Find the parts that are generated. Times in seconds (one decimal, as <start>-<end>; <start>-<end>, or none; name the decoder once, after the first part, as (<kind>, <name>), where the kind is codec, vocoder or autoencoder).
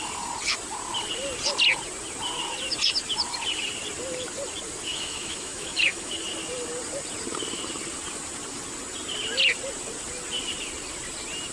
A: 4.9-6.1 (autoencoder, DAC-VAE)